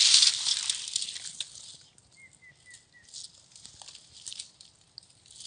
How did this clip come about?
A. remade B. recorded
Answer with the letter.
B